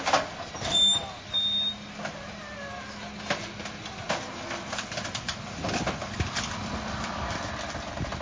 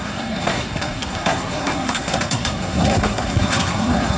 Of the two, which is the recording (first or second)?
first